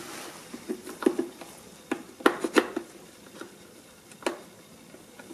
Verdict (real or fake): real